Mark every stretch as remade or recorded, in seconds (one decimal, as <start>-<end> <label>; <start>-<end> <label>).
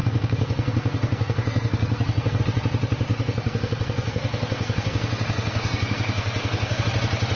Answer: 0.0-2.4 remade; 2.4-3.1 recorded; 3.1-6.8 remade; 6.8-7.4 recorded